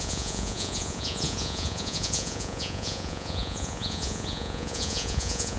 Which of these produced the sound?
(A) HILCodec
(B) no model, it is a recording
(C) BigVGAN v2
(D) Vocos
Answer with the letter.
D